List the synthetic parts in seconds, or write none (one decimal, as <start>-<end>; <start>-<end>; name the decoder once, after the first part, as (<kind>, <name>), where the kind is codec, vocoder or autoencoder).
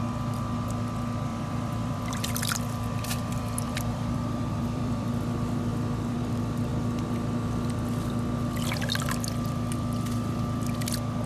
1.3-5.1 (vocoder, BigVGAN v2); 5.7-6.2